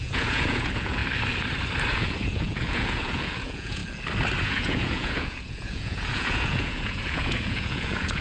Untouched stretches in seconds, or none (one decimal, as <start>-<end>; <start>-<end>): 1.0-1.9; 3.8-4.4